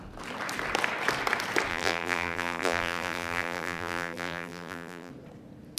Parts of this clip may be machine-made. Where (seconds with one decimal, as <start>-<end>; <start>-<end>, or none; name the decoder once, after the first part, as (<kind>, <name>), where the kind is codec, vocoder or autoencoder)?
1.7-5.1 (vocoder, BigVGAN v2)